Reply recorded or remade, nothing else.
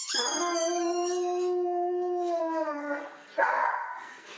remade